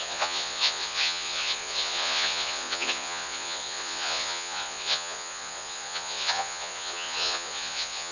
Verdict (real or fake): fake